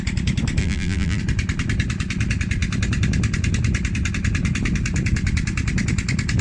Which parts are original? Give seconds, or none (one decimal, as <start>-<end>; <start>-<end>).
0.0-0.6; 1.2-6.4